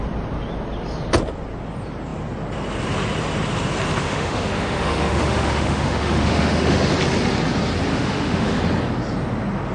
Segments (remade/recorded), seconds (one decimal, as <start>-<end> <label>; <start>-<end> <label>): 0.0-4.0 recorded; 4.0-6.9 remade; 6.9-7.9 recorded; 7.9-8.6 remade; 8.6-9.7 recorded